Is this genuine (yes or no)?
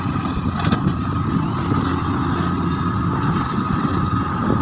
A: yes